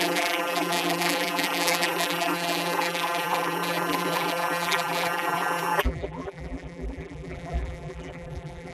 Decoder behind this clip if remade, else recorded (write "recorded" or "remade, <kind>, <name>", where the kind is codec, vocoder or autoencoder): remade, vocoder, BigVGAN v2